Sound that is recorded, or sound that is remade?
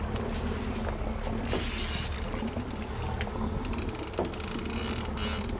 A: recorded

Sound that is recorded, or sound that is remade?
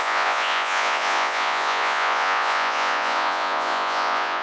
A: remade